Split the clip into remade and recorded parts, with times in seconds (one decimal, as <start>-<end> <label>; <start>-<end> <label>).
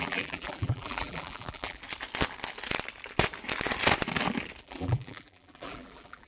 0.0-1.8 remade; 1.8-4.6 recorded; 4.6-6.3 remade